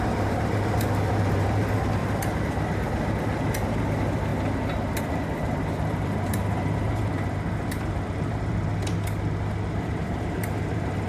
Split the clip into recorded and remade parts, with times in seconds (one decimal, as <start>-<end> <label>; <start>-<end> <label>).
0.0-2.0 remade; 2.0-3.5 recorded; 3.5-4.3 remade; 4.3-5.2 recorded; 5.2-8.7 remade; 8.7-9.8 recorded; 9.8-11.1 remade